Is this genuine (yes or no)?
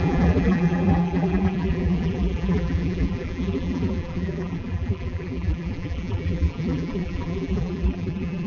no